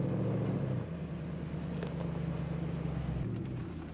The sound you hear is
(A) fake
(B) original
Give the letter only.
B